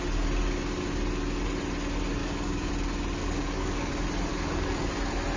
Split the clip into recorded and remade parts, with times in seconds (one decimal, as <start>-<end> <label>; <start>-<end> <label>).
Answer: 0.0-2.2 recorded; 2.2-2.7 remade; 2.7-3.2 recorded; 3.2-3.9 remade; 3.9-4.3 recorded; 4.3-4.9 remade; 4.9-5.4 recorded